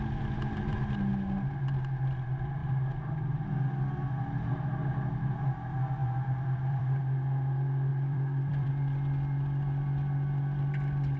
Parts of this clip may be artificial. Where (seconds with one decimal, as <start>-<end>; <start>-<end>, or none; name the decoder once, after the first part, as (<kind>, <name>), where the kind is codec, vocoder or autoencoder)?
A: 6.0-7.0 (vocoder, BigVGAN v2); 7.9-8.7